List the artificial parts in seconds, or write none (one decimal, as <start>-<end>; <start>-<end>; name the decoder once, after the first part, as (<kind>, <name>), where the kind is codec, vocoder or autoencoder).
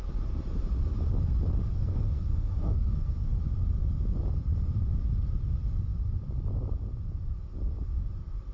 1.7-3.4 (codec, SNAC)